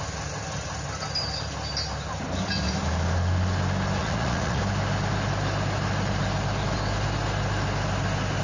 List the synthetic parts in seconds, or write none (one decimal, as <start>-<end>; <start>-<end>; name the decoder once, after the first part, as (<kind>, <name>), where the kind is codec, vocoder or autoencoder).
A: 4.0-4.6 (vocoder, Vocos)